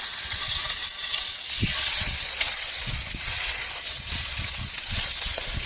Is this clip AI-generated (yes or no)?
yes